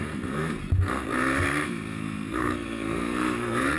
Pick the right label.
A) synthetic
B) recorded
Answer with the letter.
A